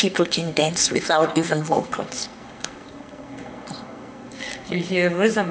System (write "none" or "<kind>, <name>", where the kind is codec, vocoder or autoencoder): codec, SNAC